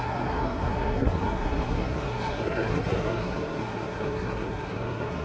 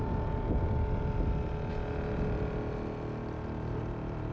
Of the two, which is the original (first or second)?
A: second